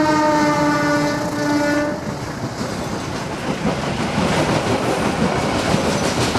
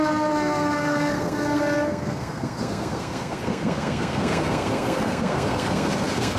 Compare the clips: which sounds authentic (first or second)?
first